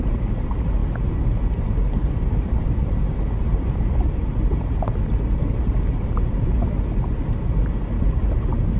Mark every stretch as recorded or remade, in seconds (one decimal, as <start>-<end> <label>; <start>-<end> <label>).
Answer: 0.0-8.8 recorded